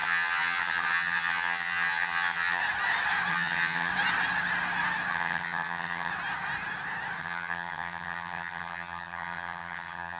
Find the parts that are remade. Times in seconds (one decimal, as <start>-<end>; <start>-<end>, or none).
0.0-2.6; 3.3-3.9; 5.1-6.1; 7.2-10.2